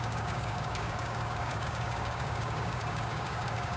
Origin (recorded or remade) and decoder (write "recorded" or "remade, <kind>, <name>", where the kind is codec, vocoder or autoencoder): remade, codec, DAC